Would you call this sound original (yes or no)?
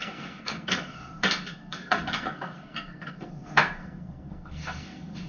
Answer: no